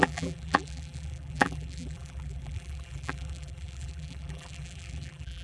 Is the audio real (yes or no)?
no